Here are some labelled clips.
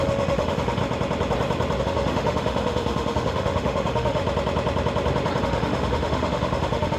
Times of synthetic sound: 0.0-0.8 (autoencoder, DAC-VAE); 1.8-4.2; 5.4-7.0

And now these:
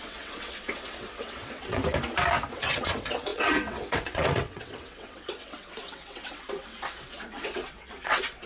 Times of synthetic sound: 0.0-1.8 (vocoder, WaveNeXt); 2.5-8.5